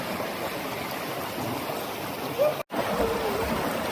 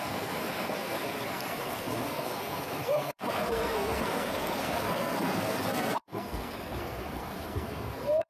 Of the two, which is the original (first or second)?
first